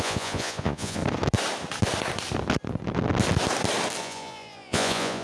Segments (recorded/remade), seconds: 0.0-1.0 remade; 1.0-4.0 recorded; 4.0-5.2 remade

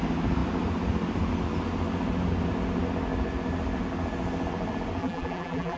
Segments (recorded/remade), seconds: 0.0-5.0 recorded; 5.0-5.8 remade

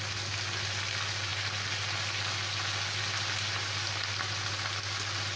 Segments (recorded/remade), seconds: 0.0-5.4 recorded

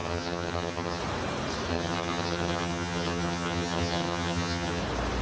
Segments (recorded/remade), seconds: 0.0-1.0 remade; 1.0-1.7 recorded; 1.7-4.8 remade; 4.8-5.2 recorded

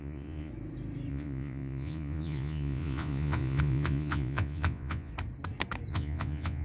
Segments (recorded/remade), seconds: 0.0-0.5 remade; 0.5-1.1 recorded; 1.1-5.1 remade; 5.1-5.9 recorded; 5.9-6.6 remade

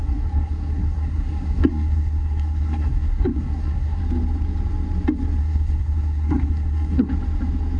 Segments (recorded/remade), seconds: 0.0-4.0 remade; 4.0-5.4 recorded; 5.4-7.1 remade; 7.1-7.8 recorded

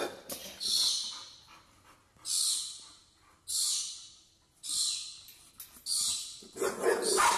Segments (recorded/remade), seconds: 0.0-7.4 recorded

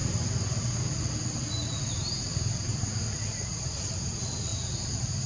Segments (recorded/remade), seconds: 0.0-2.3 recorded; 2.3-3.8 remade; 3.8-4.5 recorded; 4.5-5.3 remade